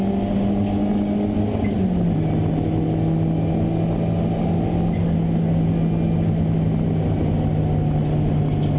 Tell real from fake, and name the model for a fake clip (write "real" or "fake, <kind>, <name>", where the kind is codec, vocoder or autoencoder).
real